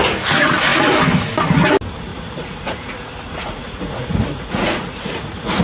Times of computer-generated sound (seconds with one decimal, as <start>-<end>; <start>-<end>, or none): 2.1-5.6